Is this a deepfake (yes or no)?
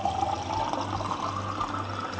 no